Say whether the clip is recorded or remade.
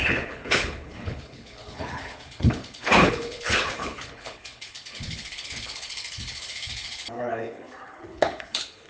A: remade